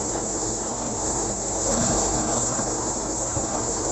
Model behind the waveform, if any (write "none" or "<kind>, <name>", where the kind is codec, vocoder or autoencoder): codec, SNAC